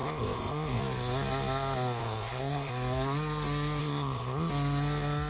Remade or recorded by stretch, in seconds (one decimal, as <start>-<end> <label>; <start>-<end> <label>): 0.0-0.8 remade; 0.8-2.0 recorded; 2.0-2.7 remade; 2.7-3.8 recorded; 3.8-4.5 remade; 4.5-5.3 recorded